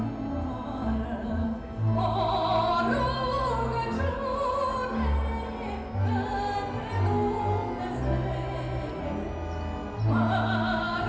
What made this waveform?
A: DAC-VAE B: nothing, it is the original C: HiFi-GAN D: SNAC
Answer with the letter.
B